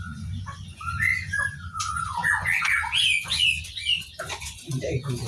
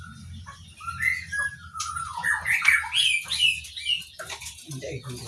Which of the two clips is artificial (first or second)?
first